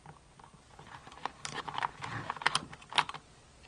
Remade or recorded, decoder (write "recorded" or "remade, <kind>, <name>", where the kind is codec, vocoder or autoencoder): recorded